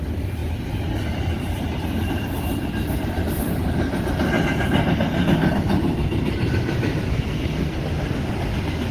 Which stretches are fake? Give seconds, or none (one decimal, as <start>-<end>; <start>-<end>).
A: 7.1-7.8